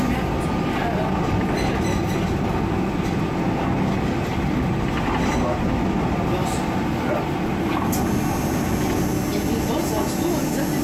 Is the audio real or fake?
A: real